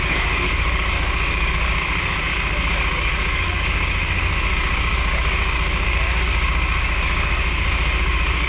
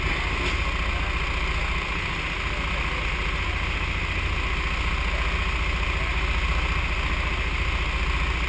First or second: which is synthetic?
first